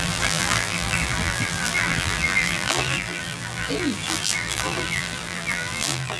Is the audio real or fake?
fake